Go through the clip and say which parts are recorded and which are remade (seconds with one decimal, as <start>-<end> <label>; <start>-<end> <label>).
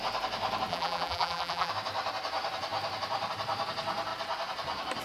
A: 0.0-0.7 recorded; 0.7-1.7 remade; 1.7-5.0 recorded